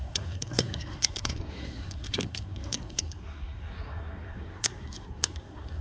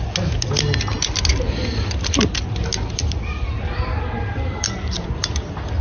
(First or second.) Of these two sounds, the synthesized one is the first